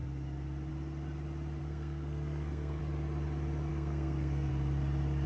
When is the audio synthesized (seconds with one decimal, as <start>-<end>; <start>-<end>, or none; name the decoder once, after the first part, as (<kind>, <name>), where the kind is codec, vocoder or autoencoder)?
1.6-2.8 (codec, SNAC); 3.7-4.5